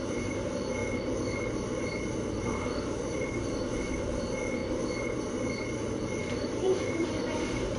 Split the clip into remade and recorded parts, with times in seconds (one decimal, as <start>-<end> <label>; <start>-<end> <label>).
0.0-7.8 remade